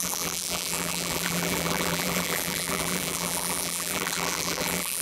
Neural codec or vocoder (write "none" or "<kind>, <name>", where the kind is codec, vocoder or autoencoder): vocoder, BigVGAN v2